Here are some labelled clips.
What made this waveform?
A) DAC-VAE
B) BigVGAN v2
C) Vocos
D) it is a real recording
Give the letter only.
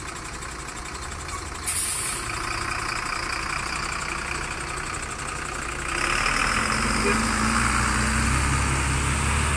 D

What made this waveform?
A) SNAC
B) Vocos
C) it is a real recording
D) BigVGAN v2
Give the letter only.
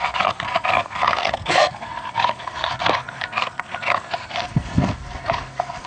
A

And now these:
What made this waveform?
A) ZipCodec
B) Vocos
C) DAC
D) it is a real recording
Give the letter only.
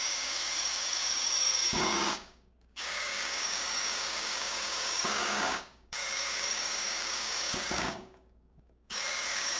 C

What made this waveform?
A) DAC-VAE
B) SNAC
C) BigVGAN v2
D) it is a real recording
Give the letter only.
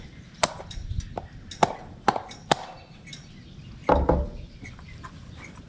D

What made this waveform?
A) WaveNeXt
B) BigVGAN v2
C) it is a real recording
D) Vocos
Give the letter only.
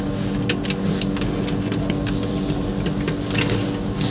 C